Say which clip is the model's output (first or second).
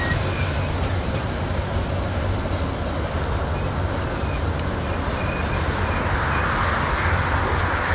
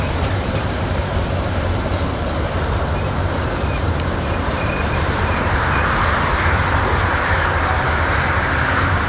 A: second